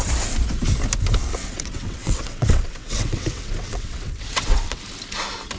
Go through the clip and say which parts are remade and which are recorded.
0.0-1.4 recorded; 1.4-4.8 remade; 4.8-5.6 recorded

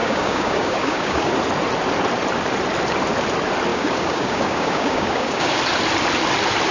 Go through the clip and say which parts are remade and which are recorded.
0.0-1.3 remade; 1.3-3.7 recorded; 3.7-5.6 remade; 5.6-6.7 recorded

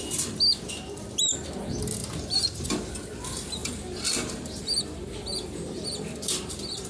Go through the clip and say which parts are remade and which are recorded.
0.0-0.5 recorded; 0.5-1.0 remade; 1.0-2.0 recorded; 2.0-2.9 remade; 2.9-3.6 recorded; 3.6-6.9 remade

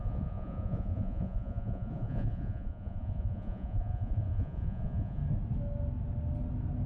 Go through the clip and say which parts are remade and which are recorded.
0.0-5.2 remade; 5.2-6.9 recorded

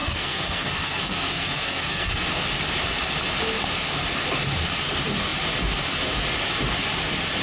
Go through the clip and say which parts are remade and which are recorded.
0.0-2.3 remade; 2.3-7.4 recorded

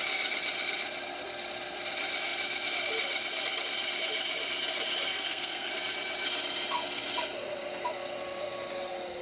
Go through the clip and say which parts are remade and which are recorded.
0.0-5.1 recorded; 5.1-5.7 remade; 5.7-9.2 recorded

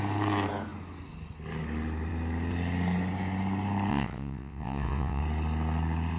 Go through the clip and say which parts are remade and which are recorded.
0.0-3.9 recorded; 3.9-5.2 remade; 5.2-6.2 recorded

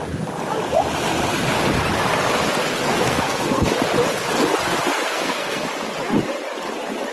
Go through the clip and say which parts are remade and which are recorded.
0.0-2.9 recorded; 2.9-3.7 remade; 3.7-4.9 recorded; 4.9-5.6 remade; 5.6-7.1 recorded